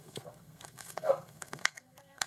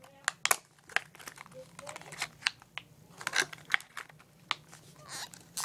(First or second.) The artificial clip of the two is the first